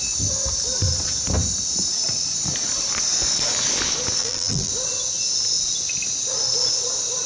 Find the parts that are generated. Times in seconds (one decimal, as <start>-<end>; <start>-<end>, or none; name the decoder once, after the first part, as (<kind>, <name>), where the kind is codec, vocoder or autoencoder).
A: 4.2-4.7 (vocoder, BigVGAN v2)